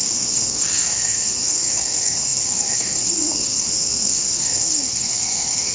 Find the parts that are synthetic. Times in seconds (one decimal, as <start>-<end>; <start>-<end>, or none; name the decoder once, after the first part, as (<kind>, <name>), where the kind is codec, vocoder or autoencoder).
0.0-5.7 (codec, SNAC)